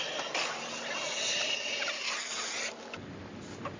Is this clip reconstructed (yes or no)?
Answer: no